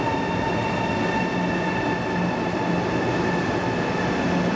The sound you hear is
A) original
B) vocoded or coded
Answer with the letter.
A